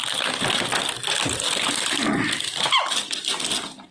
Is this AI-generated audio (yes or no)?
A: no